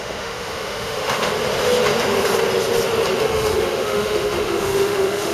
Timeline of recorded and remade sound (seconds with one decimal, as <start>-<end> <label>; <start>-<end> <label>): 0.0-1.3 remade; 1.3-3.2 recorded; 3.2-5.3 remade